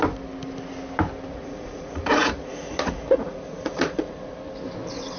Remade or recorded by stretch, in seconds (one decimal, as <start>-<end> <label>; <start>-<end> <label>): 0.0-1.3 recorded; 1.3-4.4 remade; 4.4-5.2 recorded